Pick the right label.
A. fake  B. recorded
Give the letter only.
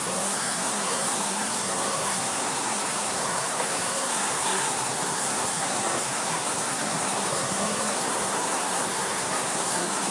A